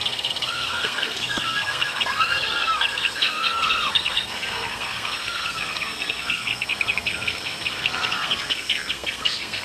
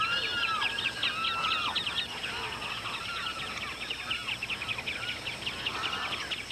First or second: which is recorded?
second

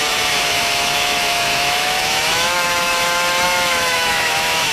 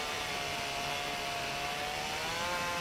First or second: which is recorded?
second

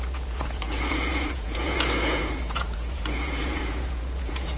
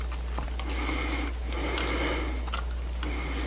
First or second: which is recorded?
second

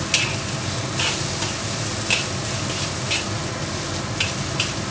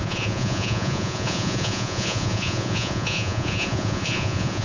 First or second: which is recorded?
first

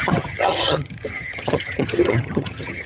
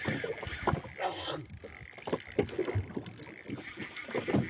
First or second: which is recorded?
second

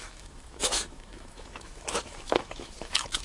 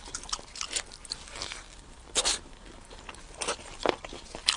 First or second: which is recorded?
second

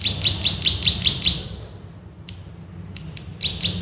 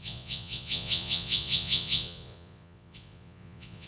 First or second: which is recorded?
first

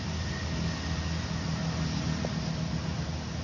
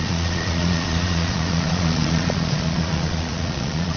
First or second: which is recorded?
first